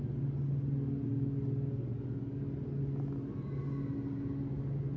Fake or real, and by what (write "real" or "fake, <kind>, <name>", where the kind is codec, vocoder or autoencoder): real